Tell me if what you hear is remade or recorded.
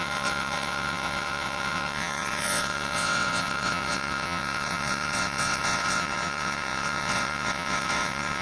remade